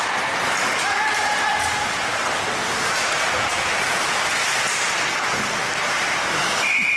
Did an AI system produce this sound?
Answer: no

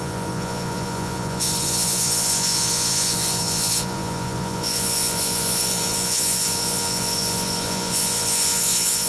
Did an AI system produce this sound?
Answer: yes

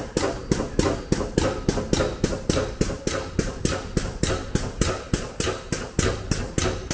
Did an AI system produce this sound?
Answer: no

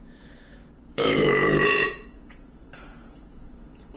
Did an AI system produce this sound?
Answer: yes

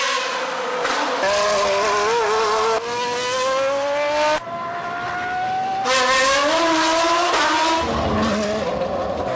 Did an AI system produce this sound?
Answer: no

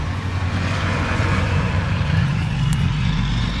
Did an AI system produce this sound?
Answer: yes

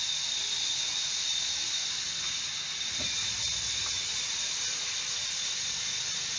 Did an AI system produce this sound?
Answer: no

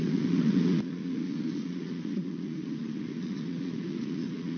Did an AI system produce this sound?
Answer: yes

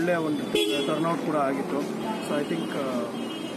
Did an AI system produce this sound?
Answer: no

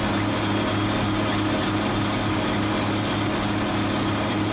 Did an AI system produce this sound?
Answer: no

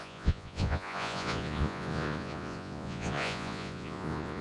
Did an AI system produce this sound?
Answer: yes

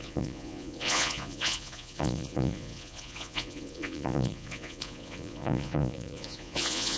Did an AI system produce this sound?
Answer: yes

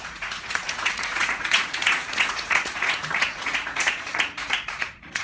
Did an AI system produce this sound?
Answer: yes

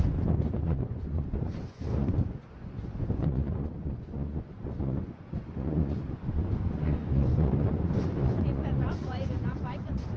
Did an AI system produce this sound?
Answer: yes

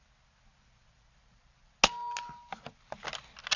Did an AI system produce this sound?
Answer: no